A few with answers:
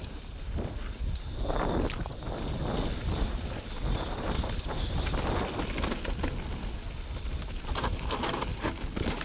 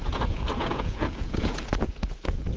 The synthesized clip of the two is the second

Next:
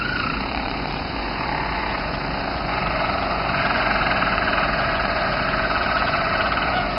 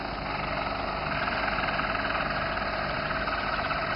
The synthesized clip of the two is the first